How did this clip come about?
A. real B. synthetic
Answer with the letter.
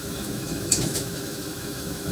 B